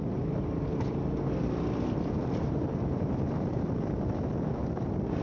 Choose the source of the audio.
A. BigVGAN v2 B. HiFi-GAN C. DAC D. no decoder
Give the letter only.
D